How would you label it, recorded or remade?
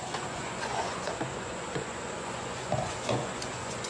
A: remade